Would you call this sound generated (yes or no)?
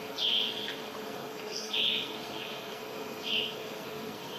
yes